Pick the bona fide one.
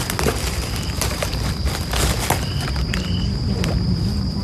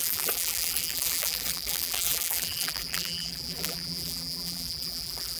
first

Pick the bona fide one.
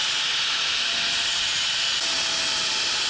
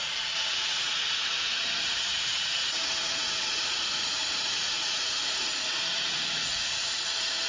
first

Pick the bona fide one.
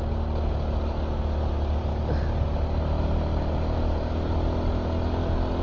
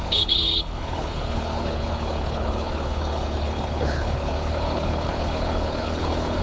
first